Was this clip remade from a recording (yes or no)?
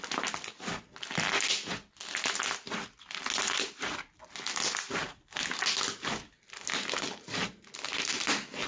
no